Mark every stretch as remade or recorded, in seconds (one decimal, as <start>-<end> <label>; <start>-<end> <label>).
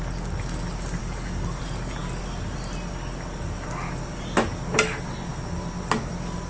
0.0-1.0 recorded; 1.0-1.6 remade; 1.6-6.5 recorded